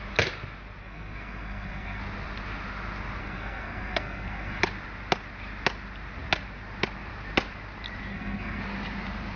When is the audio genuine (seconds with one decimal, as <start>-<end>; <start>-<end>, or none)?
0.0-0.8; 2.0-3.2; 4.6-8.1; 8.6-9.4